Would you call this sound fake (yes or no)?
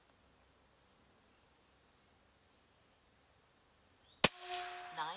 no